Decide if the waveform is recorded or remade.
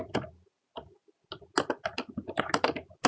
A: recorded